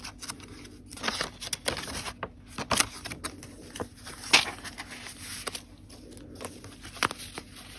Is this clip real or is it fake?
real